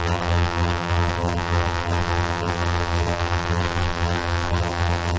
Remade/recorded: remade